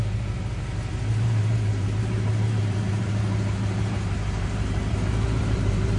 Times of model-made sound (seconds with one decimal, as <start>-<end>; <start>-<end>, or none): 0.0-6.0